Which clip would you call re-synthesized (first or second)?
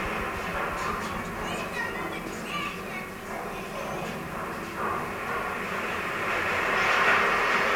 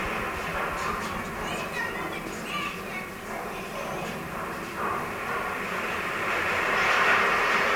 second